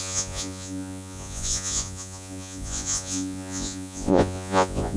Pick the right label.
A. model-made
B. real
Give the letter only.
A